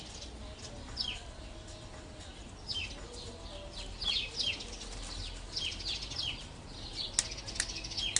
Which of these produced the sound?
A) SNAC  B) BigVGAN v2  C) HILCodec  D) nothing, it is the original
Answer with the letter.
D